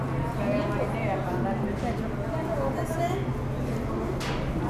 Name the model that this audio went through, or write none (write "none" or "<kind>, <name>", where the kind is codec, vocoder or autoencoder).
none